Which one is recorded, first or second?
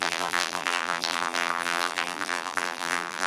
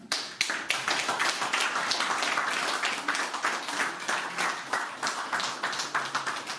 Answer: second